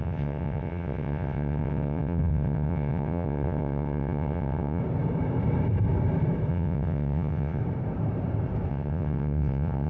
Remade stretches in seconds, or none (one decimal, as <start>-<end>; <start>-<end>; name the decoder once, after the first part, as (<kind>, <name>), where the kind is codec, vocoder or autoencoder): 0.0-4.8 (vocoder, WaveNeXt); 6.5-7.6; 8.7-9.9